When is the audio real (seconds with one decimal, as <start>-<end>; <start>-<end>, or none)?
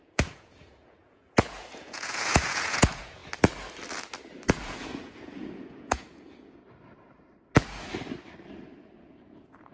3.2-4.5; 6.6-9.0